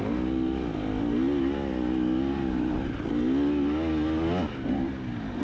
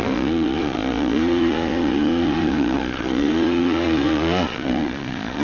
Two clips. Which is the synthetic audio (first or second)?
second